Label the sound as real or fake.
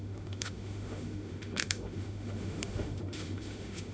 fake